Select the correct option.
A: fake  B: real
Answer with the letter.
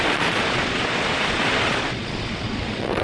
A